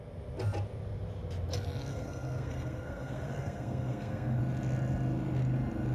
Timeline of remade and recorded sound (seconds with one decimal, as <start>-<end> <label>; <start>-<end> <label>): 0.0-1.9 recorded; 1.9-4.4 remade; 4.4-5.9 recorded